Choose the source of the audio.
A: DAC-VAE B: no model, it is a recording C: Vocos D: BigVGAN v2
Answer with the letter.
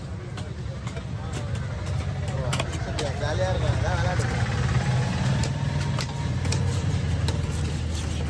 B